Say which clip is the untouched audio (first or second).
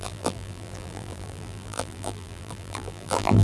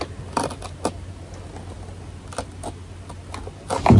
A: second